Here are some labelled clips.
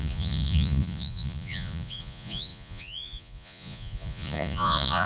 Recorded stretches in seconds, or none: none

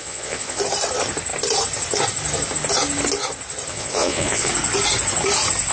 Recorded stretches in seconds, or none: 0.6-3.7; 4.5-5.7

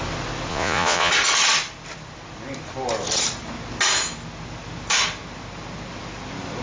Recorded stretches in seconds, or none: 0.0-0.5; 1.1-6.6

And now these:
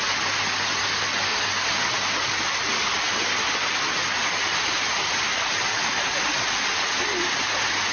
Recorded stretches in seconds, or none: 0.0-7.9